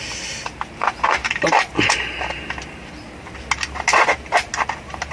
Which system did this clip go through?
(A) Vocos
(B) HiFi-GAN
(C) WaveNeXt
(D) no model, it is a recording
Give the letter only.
D